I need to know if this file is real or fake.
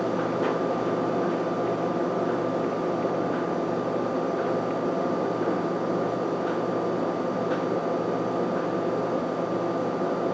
real